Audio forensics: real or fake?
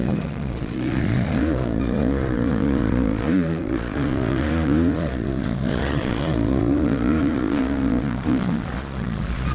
fake